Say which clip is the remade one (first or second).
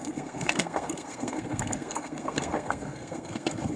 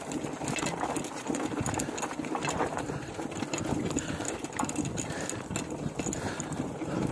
first